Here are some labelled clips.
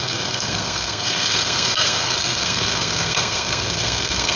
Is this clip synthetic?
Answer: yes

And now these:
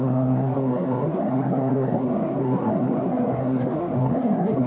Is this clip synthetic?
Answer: yes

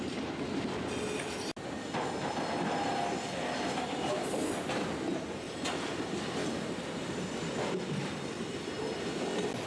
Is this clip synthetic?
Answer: no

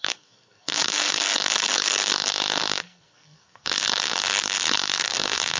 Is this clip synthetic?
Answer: yes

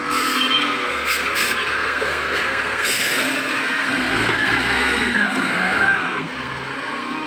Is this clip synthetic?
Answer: yes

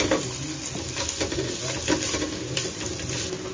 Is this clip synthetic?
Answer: no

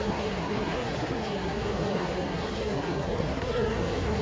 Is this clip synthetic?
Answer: yes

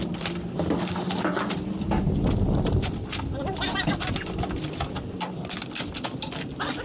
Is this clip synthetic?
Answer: no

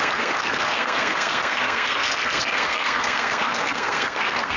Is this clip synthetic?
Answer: yes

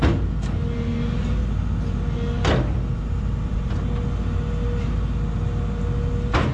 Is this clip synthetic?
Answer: no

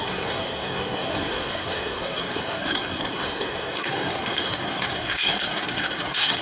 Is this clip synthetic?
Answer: yes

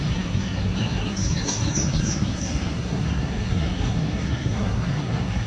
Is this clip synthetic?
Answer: yes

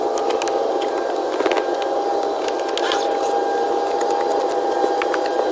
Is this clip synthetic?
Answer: no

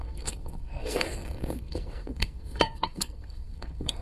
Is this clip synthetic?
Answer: yes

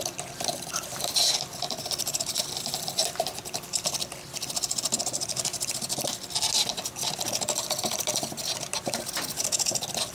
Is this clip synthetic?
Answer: no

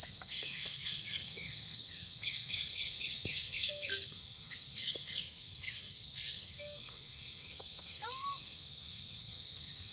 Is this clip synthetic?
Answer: yes